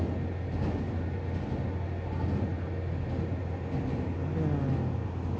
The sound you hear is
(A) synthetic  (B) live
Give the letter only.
B